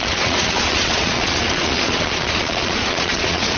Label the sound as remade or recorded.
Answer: remade